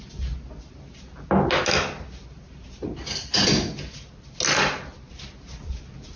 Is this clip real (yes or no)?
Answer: yes